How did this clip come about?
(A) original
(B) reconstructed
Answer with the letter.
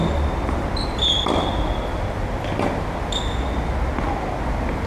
A